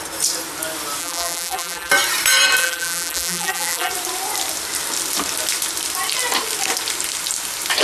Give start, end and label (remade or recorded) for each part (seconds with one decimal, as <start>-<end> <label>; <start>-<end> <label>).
0.0-1.0 recorded; 1.0-1.9 remade; 1.9-2.6 recorded; 2.6-3.9 remade; 3.9-7.8 recorded